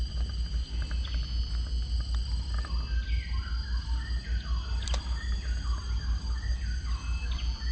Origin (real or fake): real